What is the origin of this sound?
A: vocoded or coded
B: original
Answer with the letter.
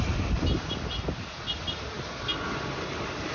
B